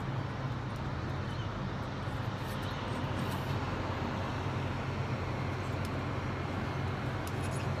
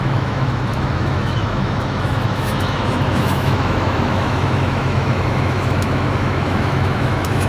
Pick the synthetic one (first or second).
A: second